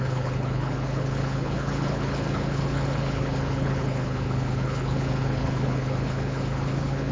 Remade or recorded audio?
remade